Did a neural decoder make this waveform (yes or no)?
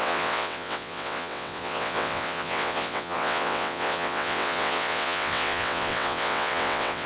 yes